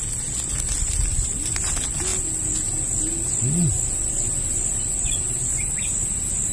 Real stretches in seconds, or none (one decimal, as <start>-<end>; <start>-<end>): 0.0-6.5